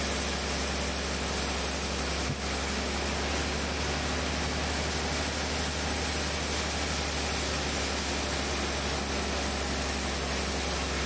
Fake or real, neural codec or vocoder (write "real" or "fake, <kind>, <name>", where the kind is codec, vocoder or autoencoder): real